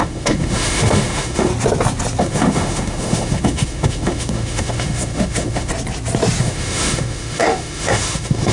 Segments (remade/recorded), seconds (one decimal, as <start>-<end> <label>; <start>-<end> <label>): 0.0-1.5 remade; 1.5-2.2 recorded; 2.2-5.7 remade; 5.7-6.4 recorded; 6.4-8.5 remade